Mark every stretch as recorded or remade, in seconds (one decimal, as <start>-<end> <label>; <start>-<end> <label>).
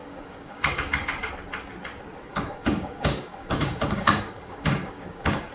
0.0-1.3 remade; 1.3-2.3 recorded; 2.3-5.5 remade